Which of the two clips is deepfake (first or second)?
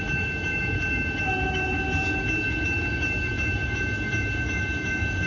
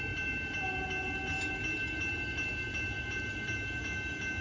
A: first